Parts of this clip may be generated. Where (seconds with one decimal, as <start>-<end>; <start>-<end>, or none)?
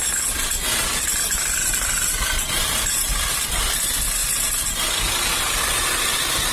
1.1-3.7; 4.2-6.0